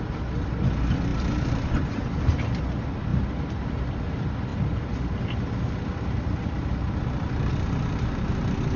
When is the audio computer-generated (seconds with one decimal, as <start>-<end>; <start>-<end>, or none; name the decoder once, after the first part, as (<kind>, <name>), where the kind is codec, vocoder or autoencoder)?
1.1-2.0 (vocoder, BigVGAN v2); 3.1-4.0; 4.5-8.3